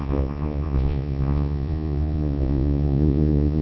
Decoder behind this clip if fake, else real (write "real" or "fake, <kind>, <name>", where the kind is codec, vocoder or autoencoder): fake, vocoder, Vocos